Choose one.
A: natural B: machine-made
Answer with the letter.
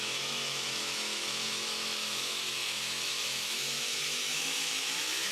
B